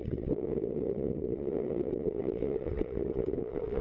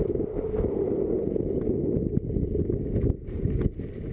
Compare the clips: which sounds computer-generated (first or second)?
first